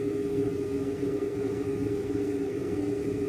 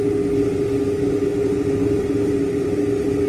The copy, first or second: first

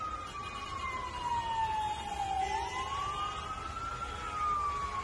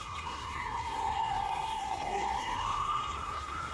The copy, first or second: second